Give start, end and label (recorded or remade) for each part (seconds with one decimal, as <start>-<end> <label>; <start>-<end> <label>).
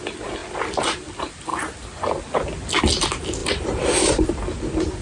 0.0-3.4 recorded; 3.4-4.3 remade; 4.3-5.0 recorded